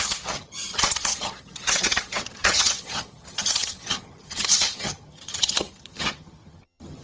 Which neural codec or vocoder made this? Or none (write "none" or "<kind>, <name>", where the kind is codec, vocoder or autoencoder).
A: vocoder, HiFi-GAN